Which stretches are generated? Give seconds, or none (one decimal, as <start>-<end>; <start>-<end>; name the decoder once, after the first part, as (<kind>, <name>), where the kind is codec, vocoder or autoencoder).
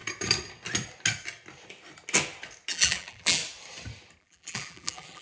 2.7-3.4 (vocoder, BigVGAN v2); 4.2-5.2